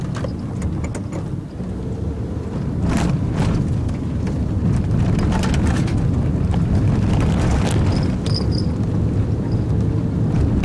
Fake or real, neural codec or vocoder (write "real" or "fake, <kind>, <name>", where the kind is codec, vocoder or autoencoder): real